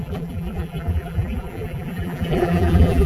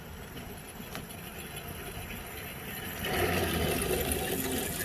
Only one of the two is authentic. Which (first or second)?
second